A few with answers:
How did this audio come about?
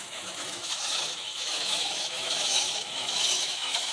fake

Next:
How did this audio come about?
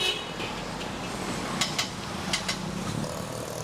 real